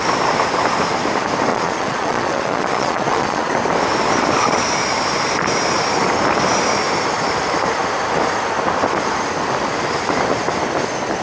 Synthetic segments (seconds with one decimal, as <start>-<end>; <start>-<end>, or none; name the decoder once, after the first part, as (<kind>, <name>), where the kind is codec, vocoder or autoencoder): 1.5-3.5 (vocoder, Vocos)